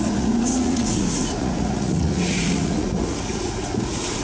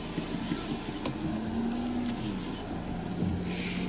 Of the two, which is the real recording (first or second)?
second